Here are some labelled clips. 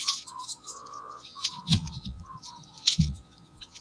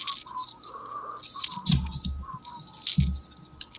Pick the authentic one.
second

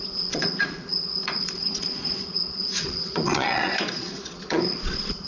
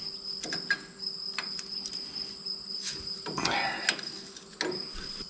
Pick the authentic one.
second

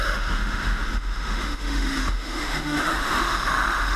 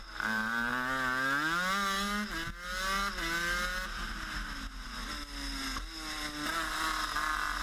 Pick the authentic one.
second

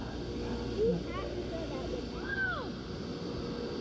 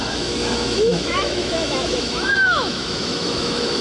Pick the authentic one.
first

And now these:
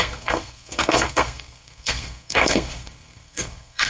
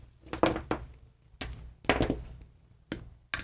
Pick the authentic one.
second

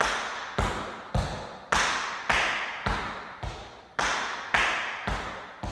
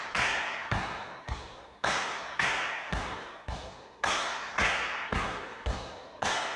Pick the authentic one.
first